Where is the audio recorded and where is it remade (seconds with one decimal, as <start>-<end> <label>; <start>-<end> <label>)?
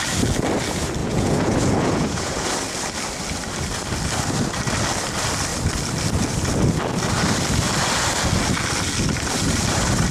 0.0-1.0 recorded; 1.0-2.5 remade; 2.5-10.1 recorded